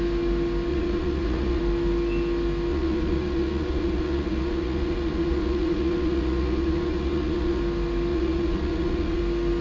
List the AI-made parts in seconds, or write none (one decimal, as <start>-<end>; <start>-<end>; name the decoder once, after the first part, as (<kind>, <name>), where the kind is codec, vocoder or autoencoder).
0.7-1.6 (vocoder, Vocos); 2.7-7.6; 8.1-9.2